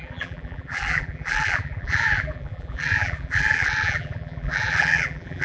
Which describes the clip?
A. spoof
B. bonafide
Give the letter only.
A